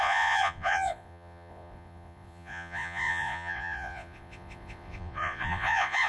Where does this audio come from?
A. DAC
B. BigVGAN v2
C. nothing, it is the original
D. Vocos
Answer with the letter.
D